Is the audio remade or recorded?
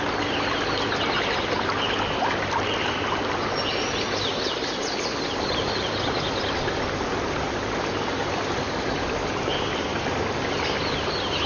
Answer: recorded